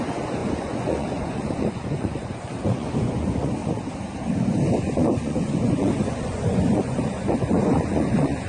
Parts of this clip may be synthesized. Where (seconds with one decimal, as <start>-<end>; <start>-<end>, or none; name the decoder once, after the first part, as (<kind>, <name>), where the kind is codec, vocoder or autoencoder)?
0.0-3.6 (vocoder, Vocos); 4.7-8.5